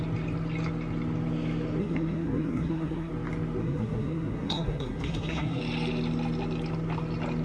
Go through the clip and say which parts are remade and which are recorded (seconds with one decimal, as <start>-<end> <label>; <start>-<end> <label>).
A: 0.0-1.8 recorded; 1.8-3.1 remade; 3.1-3.6 recorded; 3.6-5.6 remade; 5.6-7.4 recorded